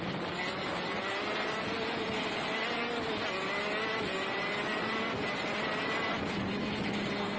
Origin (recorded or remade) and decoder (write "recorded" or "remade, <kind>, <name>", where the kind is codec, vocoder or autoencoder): recorded